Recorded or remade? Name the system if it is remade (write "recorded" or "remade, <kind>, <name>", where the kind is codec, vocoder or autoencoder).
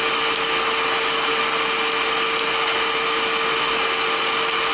recorded